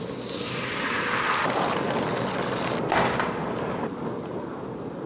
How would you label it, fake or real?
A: real